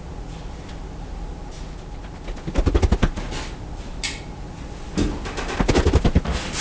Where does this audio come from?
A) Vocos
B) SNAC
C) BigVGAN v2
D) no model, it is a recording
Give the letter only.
D